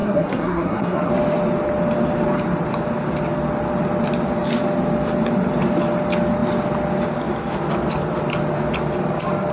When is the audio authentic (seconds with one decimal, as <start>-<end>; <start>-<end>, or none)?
1.1-9.5